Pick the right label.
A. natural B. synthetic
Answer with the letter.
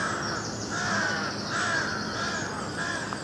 A